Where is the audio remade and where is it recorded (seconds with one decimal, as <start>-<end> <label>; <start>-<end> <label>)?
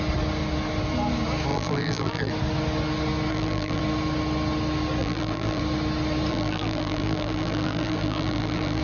0.0-1.5 recorded; 1.5-2.3 remade; 2.3-3.3 recorded; 3.3-3.8 remade; 3.8-5.0 recorded; 5.0-5.6 remade; 5.6-6.3 recorded; 6.3-8.8 remade